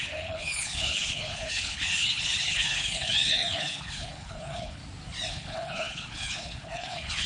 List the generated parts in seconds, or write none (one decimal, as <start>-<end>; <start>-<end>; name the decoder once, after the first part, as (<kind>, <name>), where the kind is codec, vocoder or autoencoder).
0.0-4.8 (codec, HILCodec); 5.3-7.3